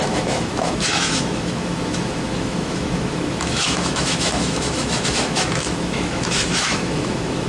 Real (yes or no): no